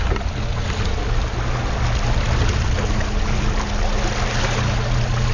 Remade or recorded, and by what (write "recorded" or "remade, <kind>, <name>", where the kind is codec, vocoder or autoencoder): recorded